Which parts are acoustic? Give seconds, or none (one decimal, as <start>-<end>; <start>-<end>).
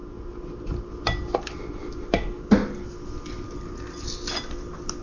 0.0-5.0